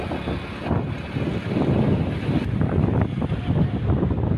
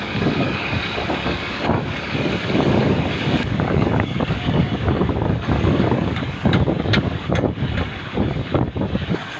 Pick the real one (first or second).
first